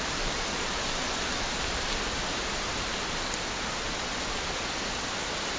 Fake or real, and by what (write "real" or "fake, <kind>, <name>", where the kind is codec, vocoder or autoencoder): real